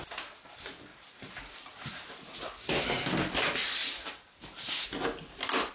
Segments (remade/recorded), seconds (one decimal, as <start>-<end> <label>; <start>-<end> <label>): 0.0-0.9 recorded; 0.9-2.4 remade; 2.4-3.8 recorded; 3.8-4.7 remade; 4.7-5.7 recorded